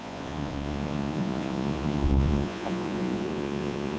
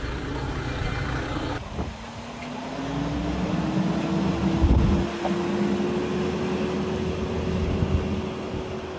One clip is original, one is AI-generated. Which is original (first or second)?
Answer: second